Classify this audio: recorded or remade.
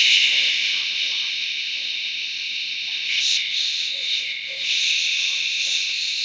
remade